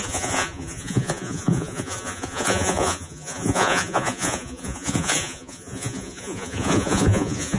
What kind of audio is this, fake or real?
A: fake